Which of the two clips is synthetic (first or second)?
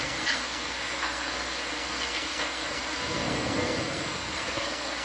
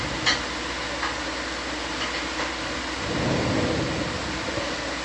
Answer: first